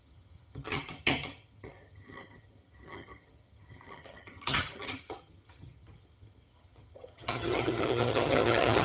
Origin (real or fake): fake